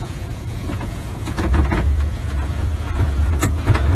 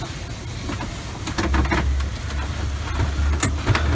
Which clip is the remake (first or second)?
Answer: first